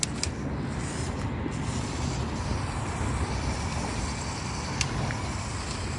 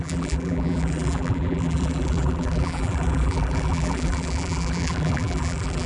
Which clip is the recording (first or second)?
first